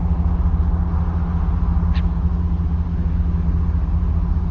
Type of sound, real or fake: real